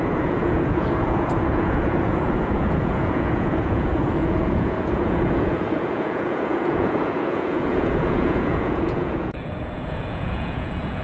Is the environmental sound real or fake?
fake